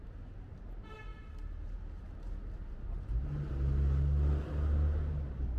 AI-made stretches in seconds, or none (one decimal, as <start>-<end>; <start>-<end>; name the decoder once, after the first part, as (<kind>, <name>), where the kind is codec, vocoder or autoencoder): none